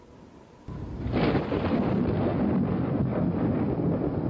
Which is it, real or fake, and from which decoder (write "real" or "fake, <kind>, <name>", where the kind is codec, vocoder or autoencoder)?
real